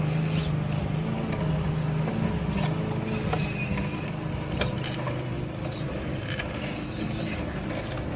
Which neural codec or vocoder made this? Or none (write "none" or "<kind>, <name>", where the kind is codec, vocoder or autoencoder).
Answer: vocoder, BigVGAN v2